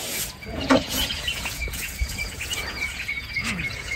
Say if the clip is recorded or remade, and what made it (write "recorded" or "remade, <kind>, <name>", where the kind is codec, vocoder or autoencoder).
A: remade, vocoder, Vocos